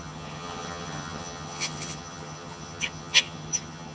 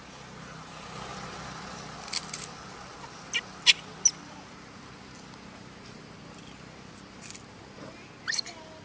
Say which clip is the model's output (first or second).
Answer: first